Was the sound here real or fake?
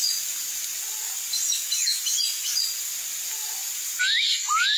real